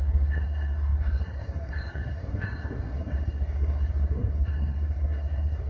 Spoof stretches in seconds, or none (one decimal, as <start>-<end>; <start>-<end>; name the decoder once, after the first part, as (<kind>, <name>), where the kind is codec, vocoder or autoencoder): 0.0-5.7 (codec, SNAC)

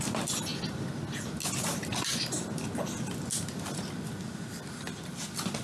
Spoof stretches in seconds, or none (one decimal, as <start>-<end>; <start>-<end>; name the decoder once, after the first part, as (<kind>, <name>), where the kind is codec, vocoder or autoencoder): none

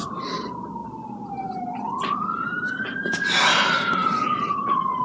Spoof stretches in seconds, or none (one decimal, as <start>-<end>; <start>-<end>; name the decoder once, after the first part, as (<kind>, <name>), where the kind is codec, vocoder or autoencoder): 0.8-1.6 (vocoder, BigVGAN v2); 4.0-5.0

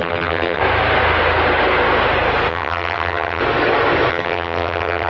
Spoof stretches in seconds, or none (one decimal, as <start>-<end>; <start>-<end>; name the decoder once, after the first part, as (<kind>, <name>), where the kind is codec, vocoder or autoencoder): 0.0-0.6 (vocoder, HiFi-GAN); 2.5-3.4; 4.1-5.1

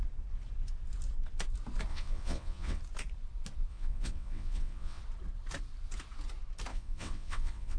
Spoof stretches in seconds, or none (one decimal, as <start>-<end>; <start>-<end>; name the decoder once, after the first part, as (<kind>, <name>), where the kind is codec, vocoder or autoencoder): 1.9-2.8 (vocoder, WaveNeXt); 3.7-5.0; 6.7-7.8

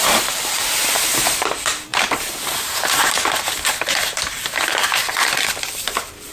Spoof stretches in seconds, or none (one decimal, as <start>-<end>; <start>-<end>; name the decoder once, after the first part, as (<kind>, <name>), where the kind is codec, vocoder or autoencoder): 0.0-6.3 (vocoder, BigVGAN v2)